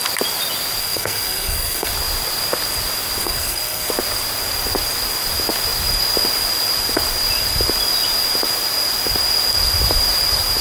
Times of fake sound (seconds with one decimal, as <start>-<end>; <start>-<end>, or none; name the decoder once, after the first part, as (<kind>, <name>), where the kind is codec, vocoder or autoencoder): 0.8-1.9 (codec, SNAC); 3.2-3.9